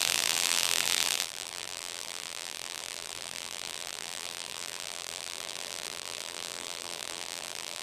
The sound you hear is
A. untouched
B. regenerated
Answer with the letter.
B